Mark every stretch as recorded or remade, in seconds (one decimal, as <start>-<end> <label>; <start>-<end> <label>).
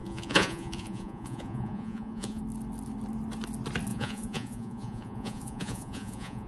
0.0-2.4 remade; 2.4-3.9 recorded; 3.9-6.5 remade